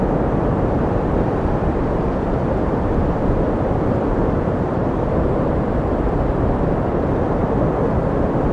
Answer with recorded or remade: remade